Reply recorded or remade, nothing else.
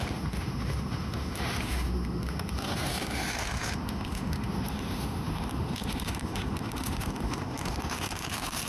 remade